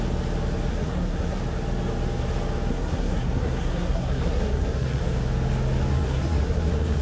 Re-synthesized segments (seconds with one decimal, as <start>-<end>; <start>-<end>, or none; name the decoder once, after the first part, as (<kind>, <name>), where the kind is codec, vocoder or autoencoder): 0.7-1.4 (codec, SNAC); 2.7-5.0; 5.9-7.0